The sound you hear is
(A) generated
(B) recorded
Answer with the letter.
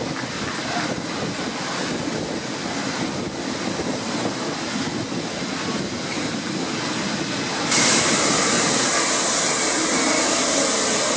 B